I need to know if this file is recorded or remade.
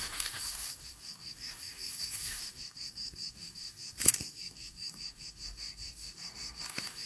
remade